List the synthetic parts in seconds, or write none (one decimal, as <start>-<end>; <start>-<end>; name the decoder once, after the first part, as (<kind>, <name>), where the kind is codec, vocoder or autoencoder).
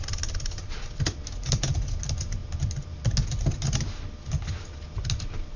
none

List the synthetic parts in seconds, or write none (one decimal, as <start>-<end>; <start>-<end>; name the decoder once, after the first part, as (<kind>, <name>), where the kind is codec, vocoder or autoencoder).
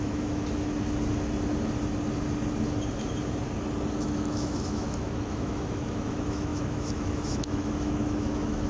0.0-0.4 (autoencoder, DAC-VAE); 4.0-8.7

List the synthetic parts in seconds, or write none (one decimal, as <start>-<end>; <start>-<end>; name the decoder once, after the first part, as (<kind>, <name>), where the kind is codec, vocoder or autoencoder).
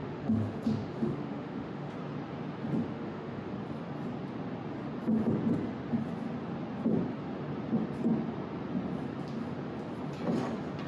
0.0-1.9 (autoencoder, DAC-VAE); 2.8-3.5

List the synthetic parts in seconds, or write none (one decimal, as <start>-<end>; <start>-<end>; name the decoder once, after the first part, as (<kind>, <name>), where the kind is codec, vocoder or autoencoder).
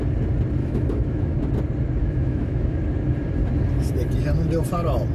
0.6-1.4 (autoencoder, DAC-VAE); 2.0-2.8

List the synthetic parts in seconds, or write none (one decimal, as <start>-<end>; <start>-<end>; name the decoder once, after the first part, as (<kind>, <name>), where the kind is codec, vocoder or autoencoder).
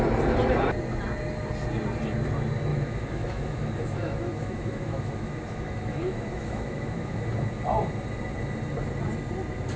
2.7-7.2 (autoencoder, DAC-VAE)